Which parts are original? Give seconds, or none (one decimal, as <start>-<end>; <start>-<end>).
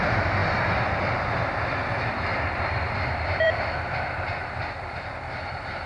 0.0-0.4; 1.1-2.3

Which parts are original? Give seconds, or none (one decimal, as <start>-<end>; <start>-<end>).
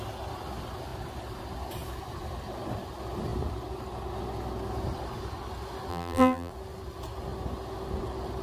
0.0-5.9; 6.5-8.4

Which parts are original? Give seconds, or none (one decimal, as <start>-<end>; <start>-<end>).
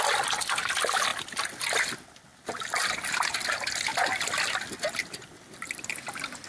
0.0-1.1; 1.9-5.0; 5.9-6.5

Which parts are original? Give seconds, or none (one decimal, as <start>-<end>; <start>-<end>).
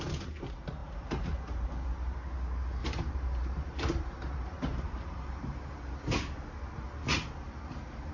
0.0-0.8; 1.6-2.8; 5.6-8.1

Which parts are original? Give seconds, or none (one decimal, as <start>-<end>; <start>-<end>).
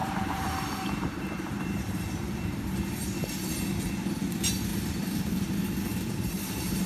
3.5-4.7; 5.5-5.9